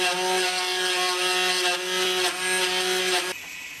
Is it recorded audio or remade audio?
recorded